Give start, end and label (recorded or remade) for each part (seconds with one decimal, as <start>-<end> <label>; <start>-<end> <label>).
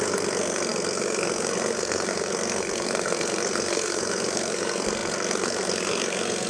0.0-6.5 remade